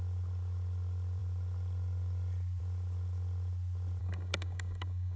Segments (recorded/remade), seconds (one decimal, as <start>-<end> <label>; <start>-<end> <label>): 0.0-4.0 recorded; 4.0-5.2 remade